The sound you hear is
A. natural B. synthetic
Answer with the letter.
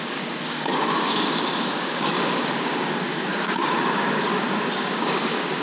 B